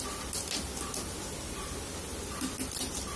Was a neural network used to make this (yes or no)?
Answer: no